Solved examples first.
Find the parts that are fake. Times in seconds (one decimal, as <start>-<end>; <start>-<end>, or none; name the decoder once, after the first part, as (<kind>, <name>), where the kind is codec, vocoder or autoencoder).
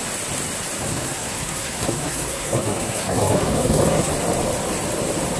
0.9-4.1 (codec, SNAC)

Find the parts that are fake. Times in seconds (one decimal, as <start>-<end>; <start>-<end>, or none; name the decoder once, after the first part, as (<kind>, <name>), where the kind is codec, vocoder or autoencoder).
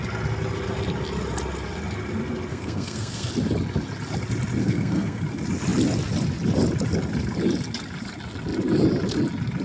2.5-3.3 (codec, SNAC); 4.6-5.2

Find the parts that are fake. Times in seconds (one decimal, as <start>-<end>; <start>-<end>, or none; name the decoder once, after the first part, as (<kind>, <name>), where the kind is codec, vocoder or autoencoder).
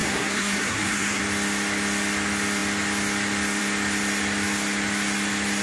0.0-1.2 (codec, SNAC)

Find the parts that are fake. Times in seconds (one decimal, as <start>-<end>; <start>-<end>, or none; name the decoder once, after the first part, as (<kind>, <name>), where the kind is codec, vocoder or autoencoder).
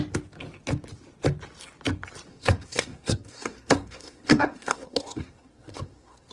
2.3-6.3 (codec, SNAC)